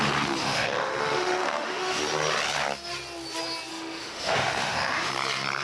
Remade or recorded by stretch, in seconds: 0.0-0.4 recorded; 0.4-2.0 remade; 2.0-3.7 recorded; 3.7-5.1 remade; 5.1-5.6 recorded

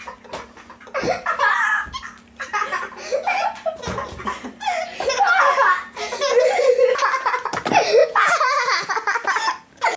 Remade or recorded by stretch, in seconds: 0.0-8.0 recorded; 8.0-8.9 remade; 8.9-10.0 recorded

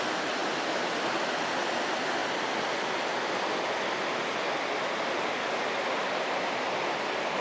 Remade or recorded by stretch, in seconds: 0.0-7.4 recorded

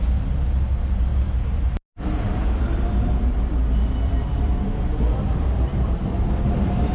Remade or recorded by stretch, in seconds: 0.0-6.9 recorded

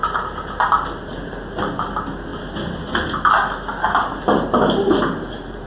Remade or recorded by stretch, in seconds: 0.0-2.3 recorded; 2.3-2.8 remade; 2.8-5.7 recorded